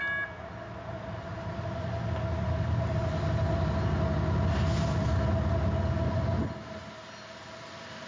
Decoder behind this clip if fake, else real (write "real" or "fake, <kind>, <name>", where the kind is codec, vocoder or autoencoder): real